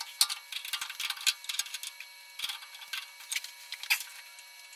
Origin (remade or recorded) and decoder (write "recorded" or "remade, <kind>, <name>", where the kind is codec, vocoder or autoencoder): recorded